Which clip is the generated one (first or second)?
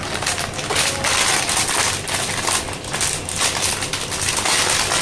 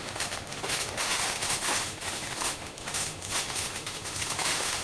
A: second